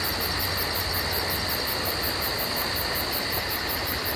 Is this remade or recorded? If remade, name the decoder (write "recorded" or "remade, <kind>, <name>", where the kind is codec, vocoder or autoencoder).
recorded